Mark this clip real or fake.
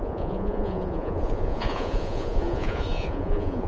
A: fake